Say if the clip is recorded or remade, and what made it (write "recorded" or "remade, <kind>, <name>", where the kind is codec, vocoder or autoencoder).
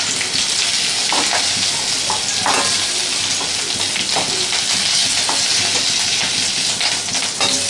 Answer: recorded